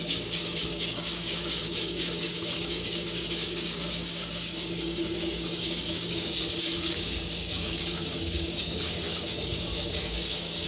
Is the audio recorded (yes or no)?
no